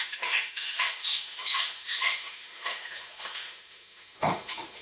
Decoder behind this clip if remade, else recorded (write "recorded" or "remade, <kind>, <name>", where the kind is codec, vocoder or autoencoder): remade, autoencoder, DAC-VAE